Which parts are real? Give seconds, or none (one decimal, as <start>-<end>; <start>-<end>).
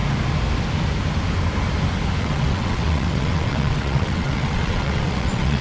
0.0-2.2